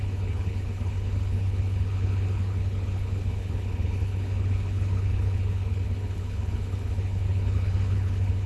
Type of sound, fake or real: fake